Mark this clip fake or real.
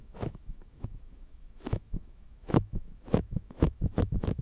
fake